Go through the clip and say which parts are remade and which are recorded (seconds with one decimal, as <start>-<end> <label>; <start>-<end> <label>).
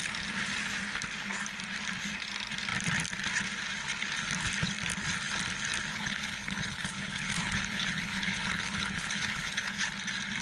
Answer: 0.0-5.9 recorded; 5.9-9.9 remade; 9.9-10.4 recorded